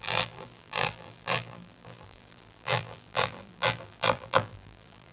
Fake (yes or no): yes